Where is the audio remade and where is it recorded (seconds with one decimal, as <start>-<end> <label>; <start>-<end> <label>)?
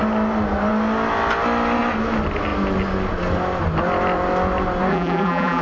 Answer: 0.0-4.9 recorded; 4.9-5.6 remade